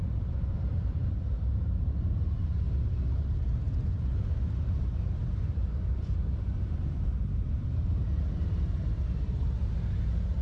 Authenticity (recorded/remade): remade